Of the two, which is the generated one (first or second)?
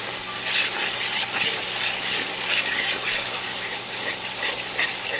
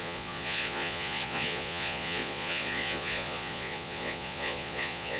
second